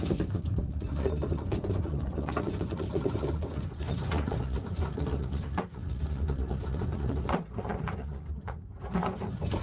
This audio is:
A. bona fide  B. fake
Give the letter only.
B